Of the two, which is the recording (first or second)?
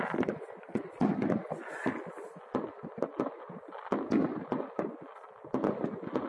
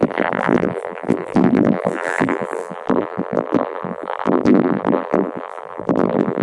first